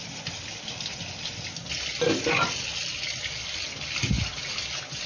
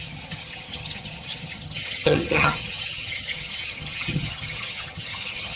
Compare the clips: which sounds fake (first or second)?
second